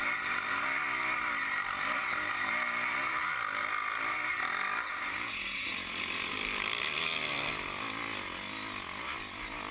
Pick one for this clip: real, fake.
real